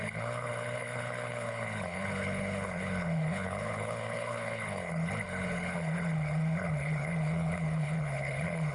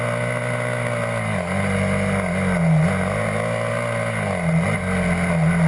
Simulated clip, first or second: first